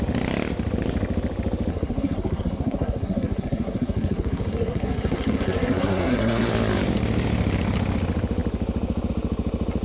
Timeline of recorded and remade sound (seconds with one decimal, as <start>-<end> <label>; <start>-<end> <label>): 0.0-1.7 recorded; 1.7-6.5 remade; 6.5-9.8 recorded